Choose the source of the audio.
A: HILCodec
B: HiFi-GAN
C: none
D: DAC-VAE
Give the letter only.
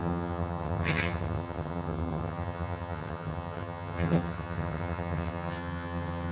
B